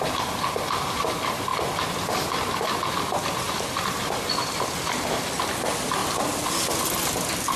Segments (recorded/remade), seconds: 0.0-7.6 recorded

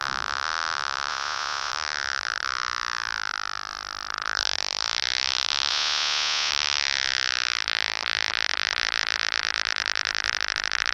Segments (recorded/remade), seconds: 0.0-1.1 recorded; 1.1-1.7 remade; 1.7-5.7 recorded; 5.7-6.5 remade; 6.5-10.9 recorded

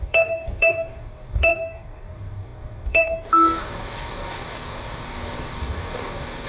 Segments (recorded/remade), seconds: 0.0-6.5 remade